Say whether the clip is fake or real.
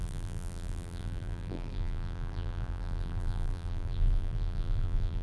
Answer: fake